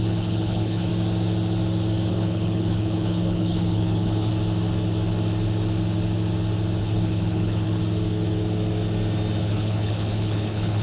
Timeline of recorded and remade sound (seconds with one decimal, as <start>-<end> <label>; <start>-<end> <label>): 0.0-0.9 remade; 0.9-2.1 recorded; 2.1-4.3 remade; 4.3-6.8 recorded; 6.8-7.8 remade; 7.8-9.4 recorded; 9.4-10.8 remade